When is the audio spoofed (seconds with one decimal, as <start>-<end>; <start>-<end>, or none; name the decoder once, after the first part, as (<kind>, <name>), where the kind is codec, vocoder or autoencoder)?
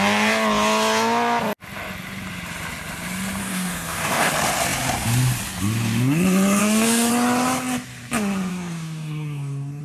3.4-4.3 (codec, DAC); 6.6-7.1; 8.5-9.8